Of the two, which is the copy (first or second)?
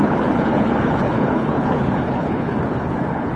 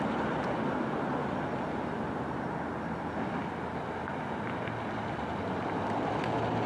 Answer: first